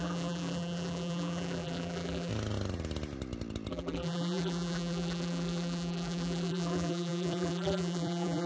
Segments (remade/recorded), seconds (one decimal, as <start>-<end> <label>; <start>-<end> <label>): 0.0-2.3 remade; 2.3-3.7 recorded; 3.7-8.5 remade